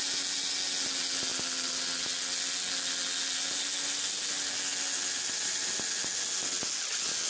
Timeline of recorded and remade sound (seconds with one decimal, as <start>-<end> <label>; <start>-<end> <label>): 0.0-7.3 recorded